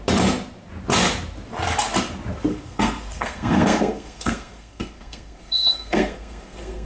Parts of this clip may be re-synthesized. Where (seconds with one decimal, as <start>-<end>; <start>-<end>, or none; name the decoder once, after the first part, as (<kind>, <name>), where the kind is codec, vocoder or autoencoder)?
2.5-6.9 (codec, SNAC)